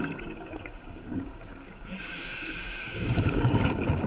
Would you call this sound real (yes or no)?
no